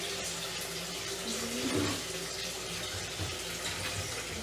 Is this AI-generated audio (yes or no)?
yes